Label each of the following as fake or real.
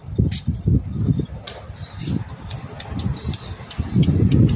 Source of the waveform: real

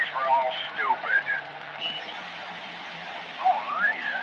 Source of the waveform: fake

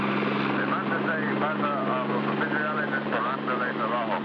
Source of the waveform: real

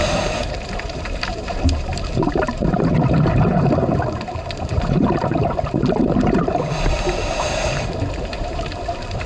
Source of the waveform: fake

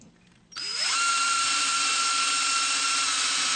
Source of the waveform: fake